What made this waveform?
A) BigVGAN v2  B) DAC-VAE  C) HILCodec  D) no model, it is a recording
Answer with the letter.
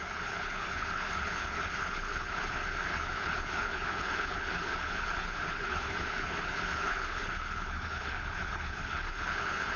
C